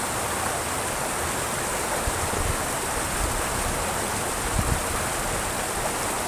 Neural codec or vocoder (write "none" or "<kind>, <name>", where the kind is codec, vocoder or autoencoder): none